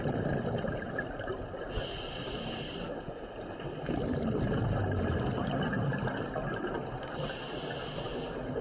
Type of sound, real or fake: real